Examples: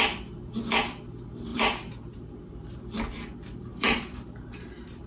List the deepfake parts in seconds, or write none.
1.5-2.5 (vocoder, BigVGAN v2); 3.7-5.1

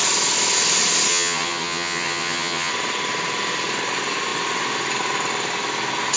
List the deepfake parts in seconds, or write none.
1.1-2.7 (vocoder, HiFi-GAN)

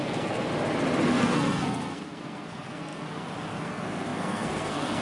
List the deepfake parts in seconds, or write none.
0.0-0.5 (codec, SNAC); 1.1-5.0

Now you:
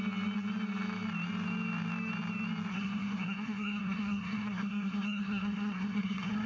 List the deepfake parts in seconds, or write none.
2.7-6.5 (codec, SNAC)

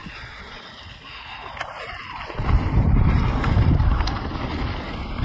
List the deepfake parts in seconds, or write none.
none